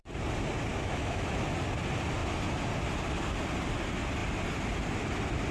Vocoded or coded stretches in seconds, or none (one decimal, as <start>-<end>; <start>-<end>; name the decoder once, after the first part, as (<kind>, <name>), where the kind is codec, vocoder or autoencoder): 0.7-1.4 (autoencoder, DAC-VAE)